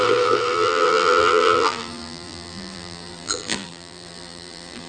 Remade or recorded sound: remade